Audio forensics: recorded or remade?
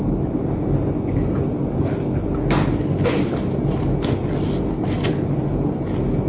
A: recorded